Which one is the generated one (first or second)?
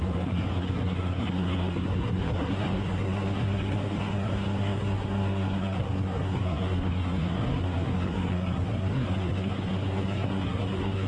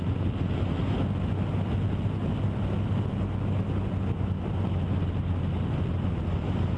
first